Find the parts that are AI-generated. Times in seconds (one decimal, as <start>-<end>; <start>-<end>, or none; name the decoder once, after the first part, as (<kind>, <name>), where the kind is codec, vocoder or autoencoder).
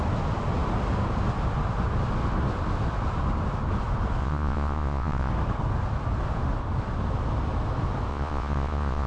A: 4.2-5.3 (vocoder, Vocos); 8.1-9.1